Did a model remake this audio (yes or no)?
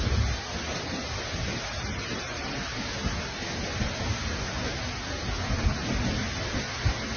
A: no